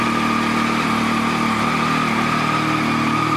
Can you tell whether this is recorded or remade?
recorded